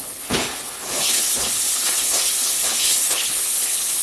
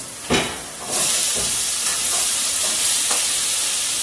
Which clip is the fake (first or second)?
first